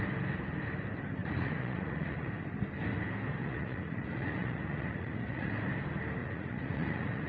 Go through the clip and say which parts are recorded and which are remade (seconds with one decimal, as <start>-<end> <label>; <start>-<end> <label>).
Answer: 0.0-1.2 recorded; 1.2-2.3 remade; 2.3-3.4 recorded; 3.4-5.5 remade; 5.5-6.2 recorded; 6.2-7.3 remade